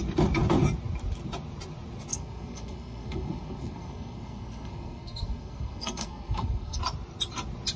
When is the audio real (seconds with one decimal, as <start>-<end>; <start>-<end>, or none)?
0.0-2.1; 6.8-7.8